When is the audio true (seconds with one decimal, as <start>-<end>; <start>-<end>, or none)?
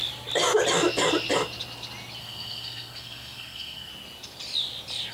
0.0-2.2; 3.9-5.1